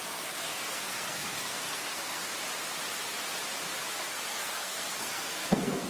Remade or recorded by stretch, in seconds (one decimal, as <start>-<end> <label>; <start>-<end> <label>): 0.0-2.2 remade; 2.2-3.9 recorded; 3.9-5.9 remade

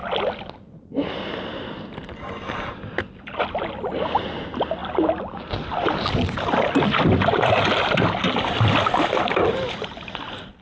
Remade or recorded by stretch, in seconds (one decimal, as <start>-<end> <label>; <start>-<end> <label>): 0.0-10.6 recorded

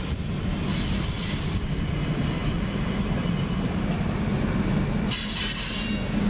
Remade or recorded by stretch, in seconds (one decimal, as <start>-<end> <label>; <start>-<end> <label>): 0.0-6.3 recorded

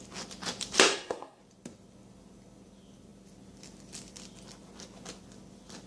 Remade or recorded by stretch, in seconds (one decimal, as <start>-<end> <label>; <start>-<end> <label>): 0.0-0.9 recorded; 0.9-1.4 remade; 1.4-5.9 recorded

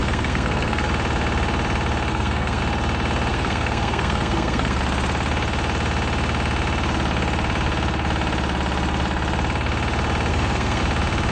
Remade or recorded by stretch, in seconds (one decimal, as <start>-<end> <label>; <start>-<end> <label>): 0.0-0.9 remade; 0.9-2.1 recorded; 2.1-2.6 remade; 2.6-3.3 recorded; 3.3-4.8 remade; 4.8-10.3 recorded; 10.3-10.8 remade; 10.8-11.3 recorded